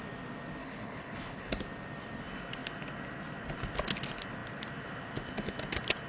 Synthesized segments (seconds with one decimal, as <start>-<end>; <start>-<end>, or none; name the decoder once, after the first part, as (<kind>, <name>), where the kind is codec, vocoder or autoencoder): 0.6-1.5 (codec, HILCodec)